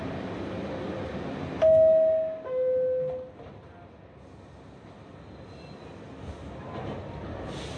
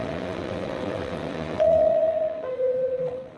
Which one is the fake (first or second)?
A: second